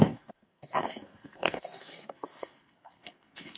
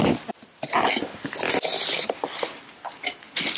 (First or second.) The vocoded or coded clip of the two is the first